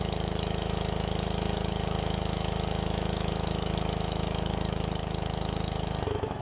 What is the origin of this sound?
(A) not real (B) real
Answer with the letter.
A